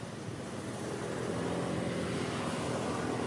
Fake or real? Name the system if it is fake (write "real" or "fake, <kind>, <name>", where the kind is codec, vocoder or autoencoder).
real